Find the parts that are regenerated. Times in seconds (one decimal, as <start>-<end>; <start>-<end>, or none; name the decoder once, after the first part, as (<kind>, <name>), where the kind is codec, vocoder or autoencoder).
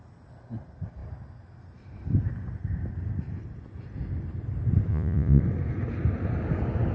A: 4.9-5.4 (vocoder, Vocos)